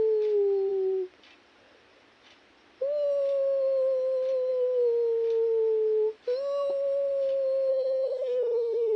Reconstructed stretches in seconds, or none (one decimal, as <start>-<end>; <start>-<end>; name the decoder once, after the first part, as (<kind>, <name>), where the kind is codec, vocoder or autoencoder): 7.7-9.0 (codec, SNAC)